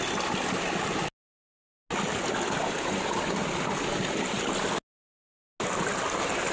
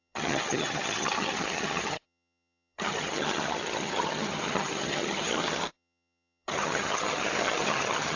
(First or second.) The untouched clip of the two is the first